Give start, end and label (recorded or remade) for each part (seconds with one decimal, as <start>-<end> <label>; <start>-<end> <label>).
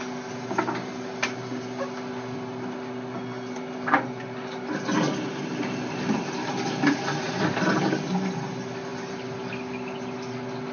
0.0-10.7 recorded